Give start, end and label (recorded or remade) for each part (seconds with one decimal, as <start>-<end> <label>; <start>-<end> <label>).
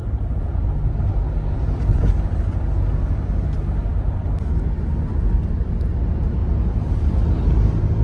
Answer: 0.0-8.0 recorded